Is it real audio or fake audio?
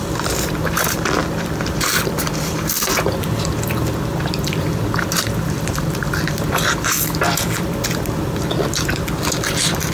fake